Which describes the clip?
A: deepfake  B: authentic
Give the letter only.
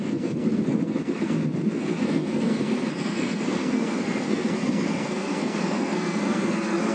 A